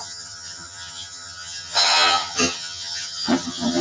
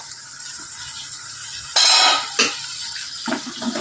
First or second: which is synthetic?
first